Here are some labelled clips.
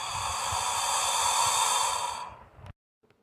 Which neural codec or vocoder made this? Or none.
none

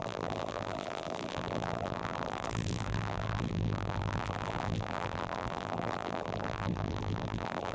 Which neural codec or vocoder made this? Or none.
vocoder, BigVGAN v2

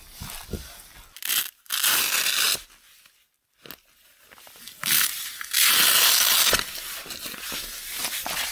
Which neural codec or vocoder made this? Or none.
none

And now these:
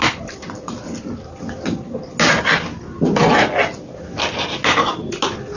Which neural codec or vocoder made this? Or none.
none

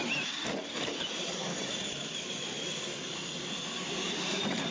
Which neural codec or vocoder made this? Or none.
vocoder, BigVGAN v2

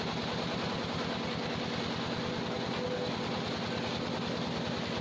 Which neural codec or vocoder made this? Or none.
none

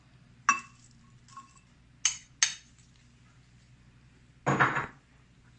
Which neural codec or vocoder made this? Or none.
none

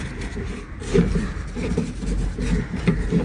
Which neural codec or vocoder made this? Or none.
vocoder, BigVGAN v2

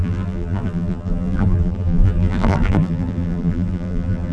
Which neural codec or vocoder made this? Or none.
vocoder, BigVGAN v2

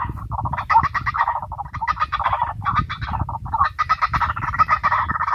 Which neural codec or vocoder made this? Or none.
vocoder, BigVGAN v2